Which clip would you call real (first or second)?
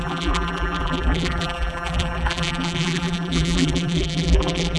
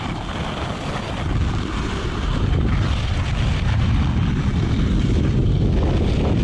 second